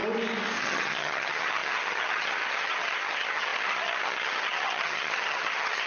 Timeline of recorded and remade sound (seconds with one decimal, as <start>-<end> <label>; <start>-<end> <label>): 0.0-0.6 recorded; 0.6-5.9 remade